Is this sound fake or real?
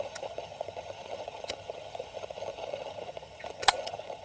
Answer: fake